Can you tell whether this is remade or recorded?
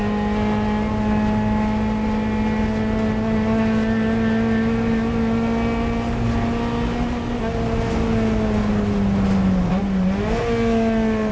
recorded